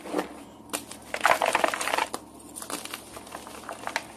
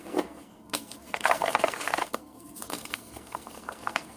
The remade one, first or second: second